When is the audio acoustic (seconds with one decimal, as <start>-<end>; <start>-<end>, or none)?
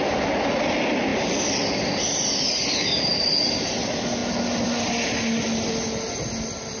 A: 0.0-6.8